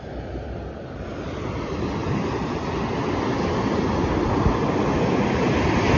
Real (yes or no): yes